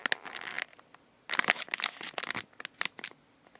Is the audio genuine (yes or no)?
yes